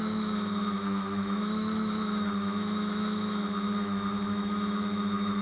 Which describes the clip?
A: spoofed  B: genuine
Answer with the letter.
A